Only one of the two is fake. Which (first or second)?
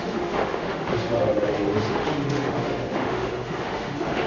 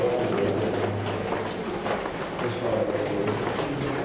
first